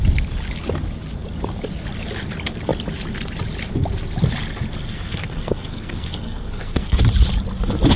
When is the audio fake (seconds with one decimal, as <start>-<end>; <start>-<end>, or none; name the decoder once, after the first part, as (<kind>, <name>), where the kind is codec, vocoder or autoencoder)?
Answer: 4.9-7.0 (codec, SNAC)